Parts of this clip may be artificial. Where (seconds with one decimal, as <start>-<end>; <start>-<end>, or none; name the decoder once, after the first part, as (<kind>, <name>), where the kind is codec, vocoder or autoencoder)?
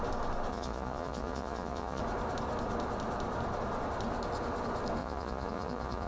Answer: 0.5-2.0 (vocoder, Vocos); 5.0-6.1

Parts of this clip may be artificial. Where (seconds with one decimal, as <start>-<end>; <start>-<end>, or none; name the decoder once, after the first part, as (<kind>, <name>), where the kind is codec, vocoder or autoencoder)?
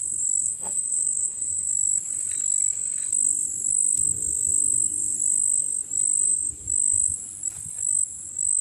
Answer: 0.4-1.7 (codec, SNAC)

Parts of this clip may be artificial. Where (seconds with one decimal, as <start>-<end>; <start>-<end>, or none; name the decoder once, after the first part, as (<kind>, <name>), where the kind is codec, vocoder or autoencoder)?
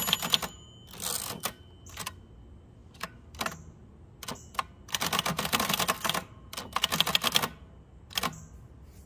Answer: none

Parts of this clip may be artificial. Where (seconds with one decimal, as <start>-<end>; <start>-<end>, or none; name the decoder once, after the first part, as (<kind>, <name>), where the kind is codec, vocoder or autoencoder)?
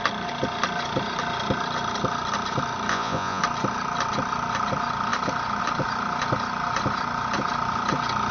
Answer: 2.9-3.4 (vocoder, Vocos)